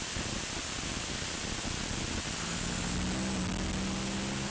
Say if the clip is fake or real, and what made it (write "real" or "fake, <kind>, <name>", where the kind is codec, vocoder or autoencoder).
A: real